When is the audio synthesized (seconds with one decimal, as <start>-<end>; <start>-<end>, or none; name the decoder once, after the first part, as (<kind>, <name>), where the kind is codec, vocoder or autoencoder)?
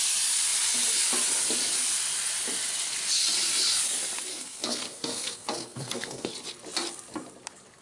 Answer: 4.3-6.3 (codec, SNAC)